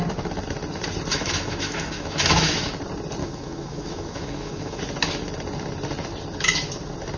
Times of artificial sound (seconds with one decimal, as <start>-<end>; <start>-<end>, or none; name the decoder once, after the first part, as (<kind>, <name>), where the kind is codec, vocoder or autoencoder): 1.1-2.7 (autoencoder, DAC-VAE); 3.2-4.8